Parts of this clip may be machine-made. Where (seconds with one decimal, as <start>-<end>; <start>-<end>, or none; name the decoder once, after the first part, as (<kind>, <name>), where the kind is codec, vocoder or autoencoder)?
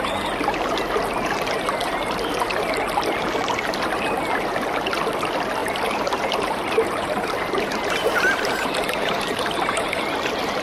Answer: 5.6-10.0 (vocoder, BigVGAN v2)